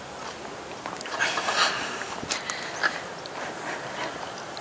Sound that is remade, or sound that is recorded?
recorded